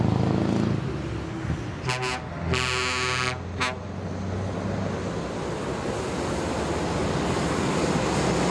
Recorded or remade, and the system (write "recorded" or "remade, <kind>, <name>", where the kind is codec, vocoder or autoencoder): recorded